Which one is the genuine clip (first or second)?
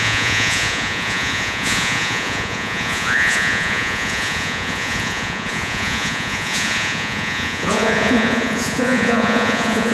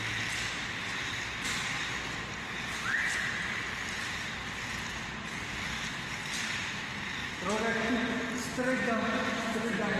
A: second